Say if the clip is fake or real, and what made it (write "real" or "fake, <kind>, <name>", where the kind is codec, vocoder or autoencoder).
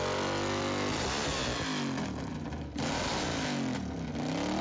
real